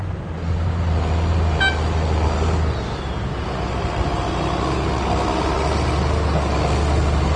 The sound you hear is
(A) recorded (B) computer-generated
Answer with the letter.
A